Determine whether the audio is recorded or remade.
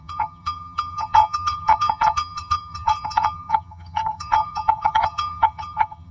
remade